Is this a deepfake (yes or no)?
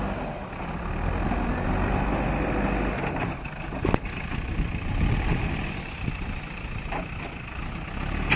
no